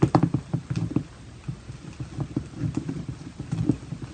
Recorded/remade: recorded